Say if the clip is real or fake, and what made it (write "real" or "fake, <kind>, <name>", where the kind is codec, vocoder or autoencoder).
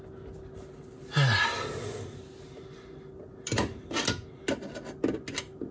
real